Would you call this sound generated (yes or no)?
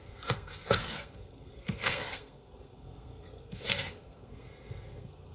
yes